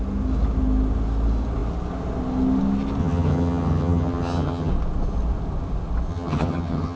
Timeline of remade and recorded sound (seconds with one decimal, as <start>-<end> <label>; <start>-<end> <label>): 0.0-3.0 recorded; 3.0-4.7 remade; 4.7-6.1 recorded; 6.1-7.0 remade